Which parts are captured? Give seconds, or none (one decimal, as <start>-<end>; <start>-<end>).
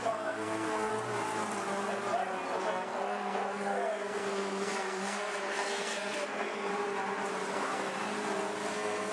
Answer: 0.9-2.6; 6.7-7.5; 7.9-8.7